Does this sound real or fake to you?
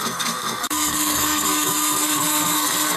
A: fake